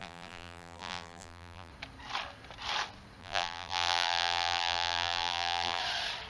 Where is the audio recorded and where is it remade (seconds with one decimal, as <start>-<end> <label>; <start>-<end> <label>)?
0.0-1.7 remade; 1.7-3.2 recorded; 3.2-5.8 remade; 5.8-6.3 recorded